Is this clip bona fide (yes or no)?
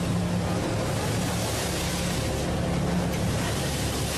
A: yes